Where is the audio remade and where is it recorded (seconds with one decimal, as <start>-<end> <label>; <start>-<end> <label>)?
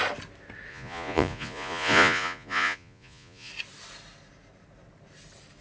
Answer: 0.0-0.7 recorded; 0.7-3.5 remade; 3.5-5.6 recorded